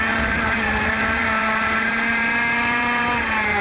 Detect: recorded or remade remade